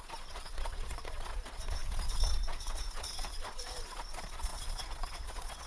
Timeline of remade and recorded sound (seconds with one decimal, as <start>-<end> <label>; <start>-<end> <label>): 0.0-5.7 remade